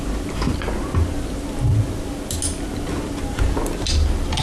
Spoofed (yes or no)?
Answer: no